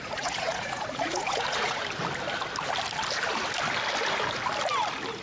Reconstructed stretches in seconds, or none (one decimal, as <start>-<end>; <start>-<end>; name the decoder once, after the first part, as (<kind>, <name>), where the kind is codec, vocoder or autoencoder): 0.0-1.8 (vocoder, Vocos)